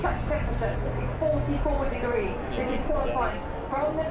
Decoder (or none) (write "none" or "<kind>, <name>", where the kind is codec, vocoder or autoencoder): none